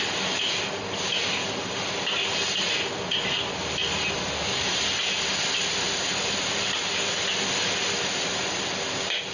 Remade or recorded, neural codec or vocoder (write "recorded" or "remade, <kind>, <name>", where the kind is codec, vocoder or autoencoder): recorded